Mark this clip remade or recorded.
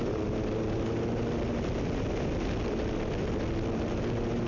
recorded